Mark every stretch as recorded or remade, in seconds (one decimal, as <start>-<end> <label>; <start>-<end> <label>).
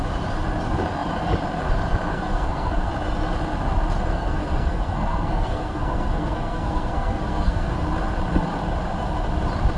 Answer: 0.0-2.1 recorded; 2.1-2.9 remade; 2.9-4.1 recorded; 4.1-7.8 remade; 7.8-9.8 recorded